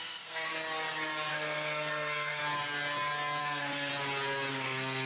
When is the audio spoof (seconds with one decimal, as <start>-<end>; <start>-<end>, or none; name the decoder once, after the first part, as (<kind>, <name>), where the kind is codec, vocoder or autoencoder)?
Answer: 0.0-0.5 (codec, SNAC); 1.3-2.4; 3.4-3.9; 4.5-5.1